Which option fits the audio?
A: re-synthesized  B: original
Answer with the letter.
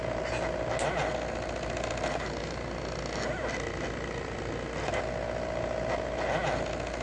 B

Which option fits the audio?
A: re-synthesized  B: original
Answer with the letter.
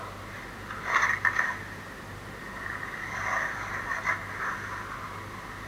B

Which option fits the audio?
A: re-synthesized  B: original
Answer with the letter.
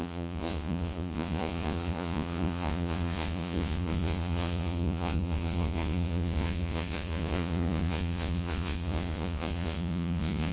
A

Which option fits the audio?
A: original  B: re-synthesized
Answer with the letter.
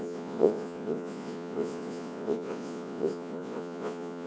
B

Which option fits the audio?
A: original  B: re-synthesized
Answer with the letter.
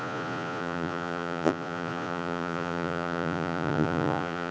B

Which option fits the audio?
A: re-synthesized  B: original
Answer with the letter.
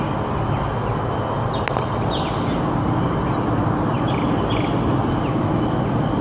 B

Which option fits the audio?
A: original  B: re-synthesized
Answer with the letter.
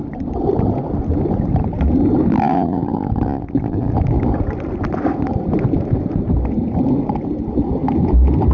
A